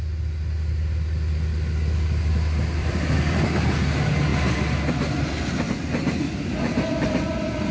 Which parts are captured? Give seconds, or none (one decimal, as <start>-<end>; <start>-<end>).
0.0-2.8; 3.5-7.7